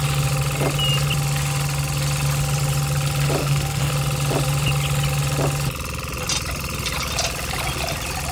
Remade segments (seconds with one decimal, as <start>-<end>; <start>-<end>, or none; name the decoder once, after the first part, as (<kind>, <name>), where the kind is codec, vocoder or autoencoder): 3.4-3.9 (codec, SNAC)